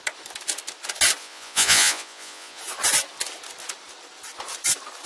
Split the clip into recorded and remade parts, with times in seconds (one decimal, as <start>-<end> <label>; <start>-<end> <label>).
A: 0.0-1.2 recorded; 1.2-2.6 remade; 2.6-5.1 recorded